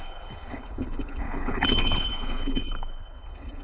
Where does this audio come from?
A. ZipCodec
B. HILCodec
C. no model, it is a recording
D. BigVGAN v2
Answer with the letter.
B